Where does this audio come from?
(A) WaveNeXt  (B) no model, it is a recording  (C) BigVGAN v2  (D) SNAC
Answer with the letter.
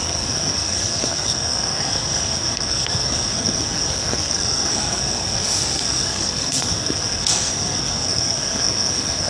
D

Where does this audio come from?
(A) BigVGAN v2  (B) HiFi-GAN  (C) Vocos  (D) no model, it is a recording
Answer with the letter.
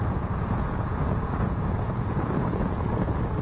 C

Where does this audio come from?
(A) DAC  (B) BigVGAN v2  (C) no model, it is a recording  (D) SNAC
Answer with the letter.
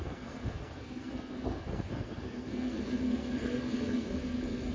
D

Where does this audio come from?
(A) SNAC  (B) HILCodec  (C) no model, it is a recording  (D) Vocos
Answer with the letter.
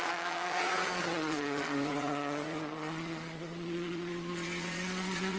D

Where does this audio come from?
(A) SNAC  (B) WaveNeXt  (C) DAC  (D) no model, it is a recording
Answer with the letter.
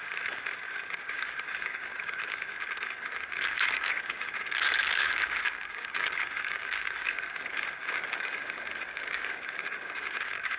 C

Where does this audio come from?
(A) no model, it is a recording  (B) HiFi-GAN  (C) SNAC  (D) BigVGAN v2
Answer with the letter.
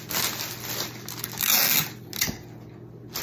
A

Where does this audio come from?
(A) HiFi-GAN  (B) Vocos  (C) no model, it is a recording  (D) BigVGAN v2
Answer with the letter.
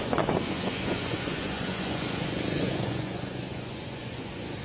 B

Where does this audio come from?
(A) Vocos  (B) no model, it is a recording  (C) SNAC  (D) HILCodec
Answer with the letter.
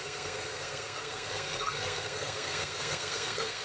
C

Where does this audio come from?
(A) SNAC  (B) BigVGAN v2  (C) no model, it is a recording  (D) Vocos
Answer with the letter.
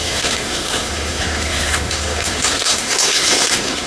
A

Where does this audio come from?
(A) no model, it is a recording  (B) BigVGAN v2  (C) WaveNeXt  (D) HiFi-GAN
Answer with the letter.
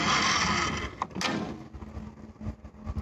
A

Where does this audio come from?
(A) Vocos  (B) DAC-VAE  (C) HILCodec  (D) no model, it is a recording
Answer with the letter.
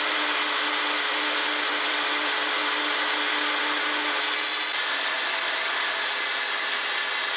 D